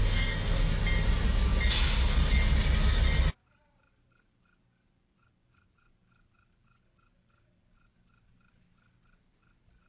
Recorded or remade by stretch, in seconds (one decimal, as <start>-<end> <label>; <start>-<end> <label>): 0.0-0.7 remade; 0.7-9.9 recorded